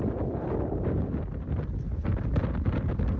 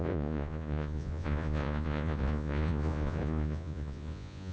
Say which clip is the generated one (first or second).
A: second